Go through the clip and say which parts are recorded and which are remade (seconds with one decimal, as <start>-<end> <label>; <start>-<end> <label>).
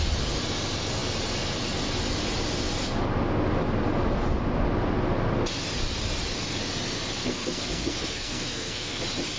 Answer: 0.0-7.2 recorded; 7.2-9.0 remade; 9.0-9.4 recorded